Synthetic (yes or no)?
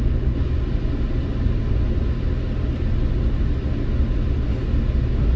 no